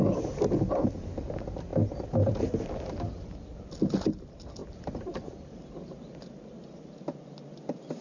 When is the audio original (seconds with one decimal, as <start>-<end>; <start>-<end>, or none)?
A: 0.0-4.6; 6.1-8.0